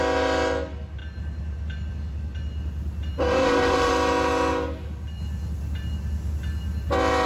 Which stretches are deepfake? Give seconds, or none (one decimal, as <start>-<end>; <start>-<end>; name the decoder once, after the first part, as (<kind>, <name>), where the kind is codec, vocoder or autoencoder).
3.2-3.9 (autoencoder, DAC-VAE)